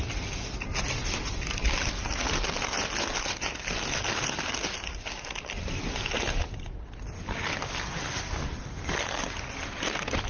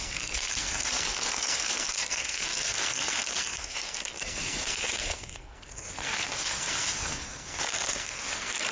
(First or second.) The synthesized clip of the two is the second